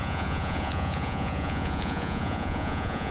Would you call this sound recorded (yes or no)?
no